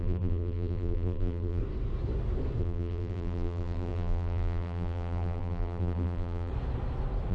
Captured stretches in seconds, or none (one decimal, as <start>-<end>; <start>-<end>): 1.6-2.6; 6.5-7.3